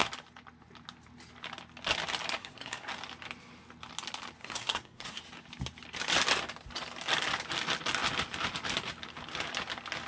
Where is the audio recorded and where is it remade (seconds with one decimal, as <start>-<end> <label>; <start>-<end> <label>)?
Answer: 0.0-2.4 recorded; 2.4-2.9 remade; 2.9-4.4 recorded; 4.4-5.2 remade; 5.2-10.1 recorded

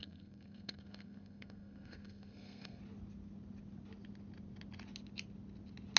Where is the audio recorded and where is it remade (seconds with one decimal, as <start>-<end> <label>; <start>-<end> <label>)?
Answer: 0.0-2.8 remade; 2.8-6.0 recorded

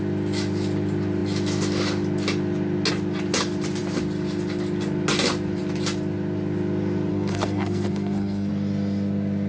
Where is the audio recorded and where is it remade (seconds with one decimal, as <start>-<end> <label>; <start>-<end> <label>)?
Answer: 0.0-7.1 recorded; 7.1-8.5 remade; 8.5-9.5 recorded

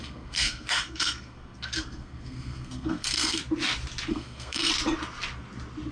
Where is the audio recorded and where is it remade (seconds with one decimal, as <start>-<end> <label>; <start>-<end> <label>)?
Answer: 0.0-3.4 remade; 3.4-4.1 recorded; 4.1-4.7 remade; 4.7-5.9 recorded

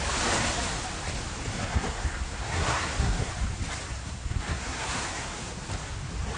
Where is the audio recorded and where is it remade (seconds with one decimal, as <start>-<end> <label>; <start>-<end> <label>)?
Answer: 0.0-1.5 recorded; 1.5-3.3 remade; 3.3-4.0 recorded; 4.0-5.6 remade; 5.6-6.4 recorded